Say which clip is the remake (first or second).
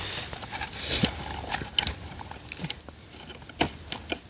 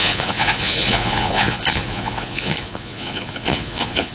second